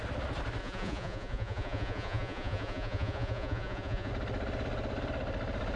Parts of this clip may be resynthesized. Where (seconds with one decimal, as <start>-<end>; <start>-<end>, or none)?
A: 0.6-4.1